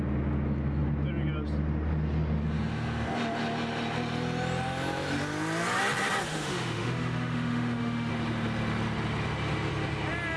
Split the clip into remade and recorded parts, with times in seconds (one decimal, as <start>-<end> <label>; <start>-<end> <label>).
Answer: 0.0-6.3 recorded; 6.3-8.1 remade; 8.1-10.4 recorded